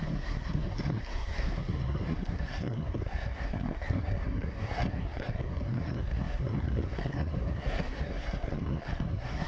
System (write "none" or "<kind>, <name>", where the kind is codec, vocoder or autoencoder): codec, SNAC